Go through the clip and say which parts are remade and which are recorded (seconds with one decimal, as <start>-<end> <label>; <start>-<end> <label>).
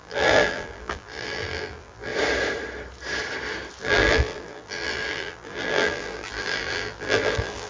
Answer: 0.0-2.1 remade; 2.1-3.8 recorded; 3.8-7.7 remade